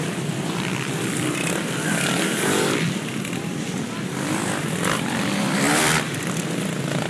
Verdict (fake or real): fake